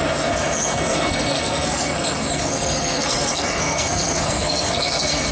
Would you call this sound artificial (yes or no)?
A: yes